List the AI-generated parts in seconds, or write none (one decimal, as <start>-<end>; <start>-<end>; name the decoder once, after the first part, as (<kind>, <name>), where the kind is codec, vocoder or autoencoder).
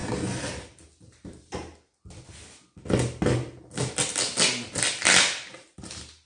1.0-1.7 (vocoder, BigVGAN v2); 5.5-6.3